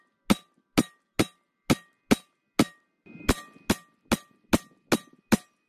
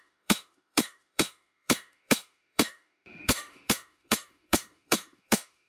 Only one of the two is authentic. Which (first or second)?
first